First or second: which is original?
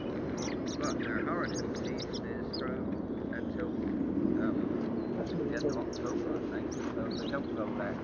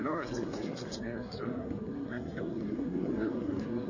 first